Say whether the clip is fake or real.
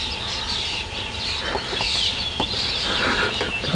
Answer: real